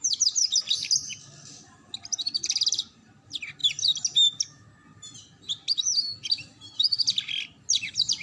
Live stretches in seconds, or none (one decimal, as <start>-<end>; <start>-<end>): 0.0-8.2